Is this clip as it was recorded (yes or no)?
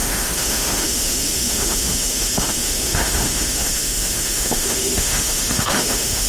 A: no